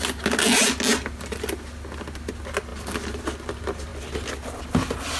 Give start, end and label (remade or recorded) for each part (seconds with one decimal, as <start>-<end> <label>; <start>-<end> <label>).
0.0-5.2 recorded